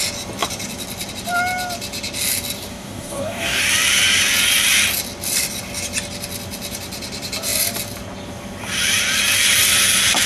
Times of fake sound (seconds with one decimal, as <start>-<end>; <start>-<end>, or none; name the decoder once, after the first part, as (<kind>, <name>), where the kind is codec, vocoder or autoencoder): 2.7-3.6 (codec, DAC)